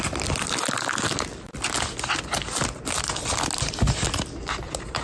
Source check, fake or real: real